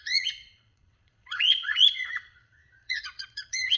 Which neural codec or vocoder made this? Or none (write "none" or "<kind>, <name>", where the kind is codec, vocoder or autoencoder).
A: vocoder, Vocos